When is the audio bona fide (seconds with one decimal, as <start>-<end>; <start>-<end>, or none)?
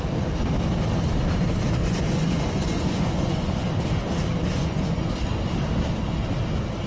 0.0-1.8; 3.6-4.5; 5.1-6.9